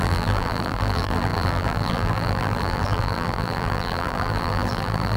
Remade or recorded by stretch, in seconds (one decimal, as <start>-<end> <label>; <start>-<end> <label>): 0.0-5.2 remade